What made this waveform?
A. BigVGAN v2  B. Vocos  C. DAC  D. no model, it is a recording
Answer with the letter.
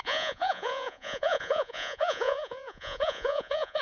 B